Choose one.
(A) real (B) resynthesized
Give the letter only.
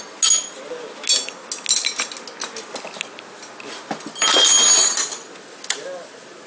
A